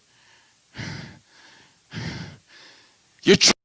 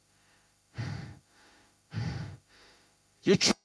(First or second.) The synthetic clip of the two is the second